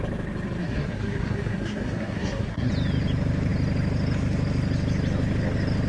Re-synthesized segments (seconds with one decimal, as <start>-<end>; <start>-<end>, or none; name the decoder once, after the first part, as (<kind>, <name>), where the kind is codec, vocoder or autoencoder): 0.6-2.7 (codec, SNAC)